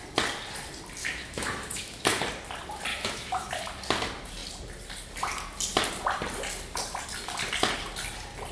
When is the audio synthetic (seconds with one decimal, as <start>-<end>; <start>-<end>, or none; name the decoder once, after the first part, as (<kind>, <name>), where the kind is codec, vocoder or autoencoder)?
1.0-2.2 (autoencoder, DAC-VAE); 2.9-3.5